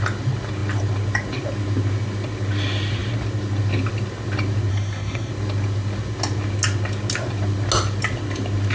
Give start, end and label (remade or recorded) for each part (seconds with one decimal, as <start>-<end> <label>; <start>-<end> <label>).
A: 0.0-4.7 recorded; 4.7-5.3 remade; 5.3-8.7 recorded